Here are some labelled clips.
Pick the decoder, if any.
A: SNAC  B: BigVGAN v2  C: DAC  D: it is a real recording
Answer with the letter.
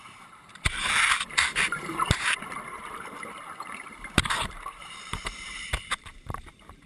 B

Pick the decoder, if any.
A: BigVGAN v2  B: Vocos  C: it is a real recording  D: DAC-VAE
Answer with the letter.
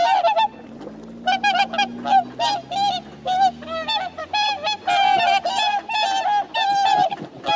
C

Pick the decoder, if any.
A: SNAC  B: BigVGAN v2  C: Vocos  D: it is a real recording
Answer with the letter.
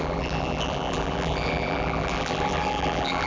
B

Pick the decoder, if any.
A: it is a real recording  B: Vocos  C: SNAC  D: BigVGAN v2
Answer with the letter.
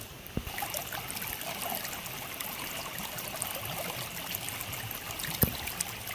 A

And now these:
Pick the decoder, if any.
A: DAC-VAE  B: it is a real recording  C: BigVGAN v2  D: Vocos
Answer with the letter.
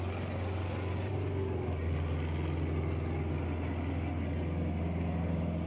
B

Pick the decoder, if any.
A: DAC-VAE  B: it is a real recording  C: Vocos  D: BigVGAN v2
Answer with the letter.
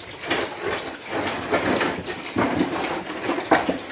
D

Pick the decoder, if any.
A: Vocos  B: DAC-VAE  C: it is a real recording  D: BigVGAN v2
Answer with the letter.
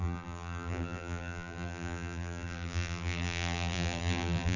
D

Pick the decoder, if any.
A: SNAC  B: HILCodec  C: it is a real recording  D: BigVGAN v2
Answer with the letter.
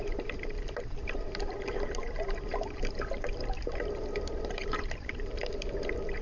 D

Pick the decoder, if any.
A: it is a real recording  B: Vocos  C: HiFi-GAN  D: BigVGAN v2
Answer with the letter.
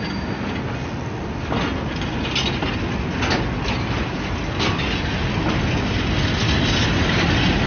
A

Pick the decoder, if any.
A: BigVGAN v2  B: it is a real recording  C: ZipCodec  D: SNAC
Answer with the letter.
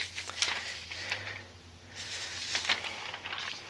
B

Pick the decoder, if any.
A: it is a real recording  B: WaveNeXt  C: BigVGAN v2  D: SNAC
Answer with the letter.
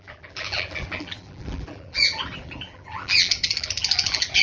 C